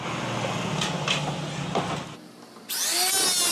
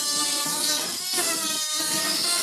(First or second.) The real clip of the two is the first